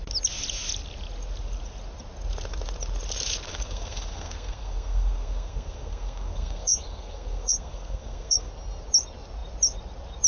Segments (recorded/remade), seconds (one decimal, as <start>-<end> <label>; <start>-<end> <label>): 0.0-3.5 recorded; 3.5-8.5 remade; 8.5-10.3 recorded